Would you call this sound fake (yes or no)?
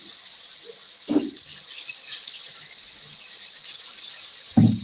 yes